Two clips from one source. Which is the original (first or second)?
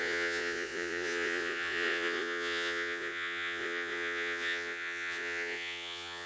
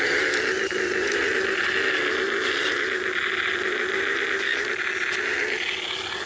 second